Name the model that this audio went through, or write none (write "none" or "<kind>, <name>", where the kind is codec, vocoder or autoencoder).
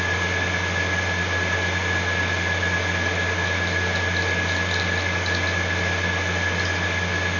none